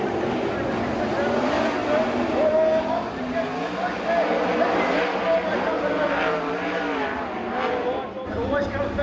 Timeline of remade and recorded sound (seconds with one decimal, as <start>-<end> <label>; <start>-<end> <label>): 0.0-9.0 recorded